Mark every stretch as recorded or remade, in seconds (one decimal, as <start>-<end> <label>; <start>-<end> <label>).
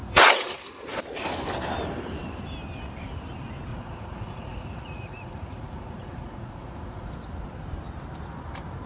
0.0-0.6 remade; 0.6-3.7 recorded; 3.7-7.1 remade; 7.1-8.9 recorded